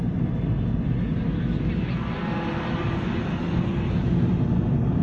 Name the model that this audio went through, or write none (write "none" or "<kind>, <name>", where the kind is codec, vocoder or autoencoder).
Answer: none